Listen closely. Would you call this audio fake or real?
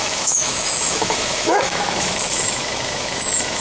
fake